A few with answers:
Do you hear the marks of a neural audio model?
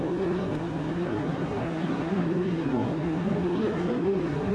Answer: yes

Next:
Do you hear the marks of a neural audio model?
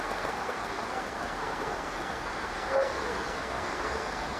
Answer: yes